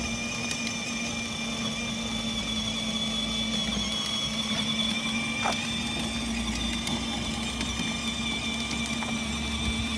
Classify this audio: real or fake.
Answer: real